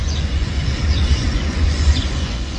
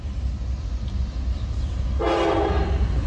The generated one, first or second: first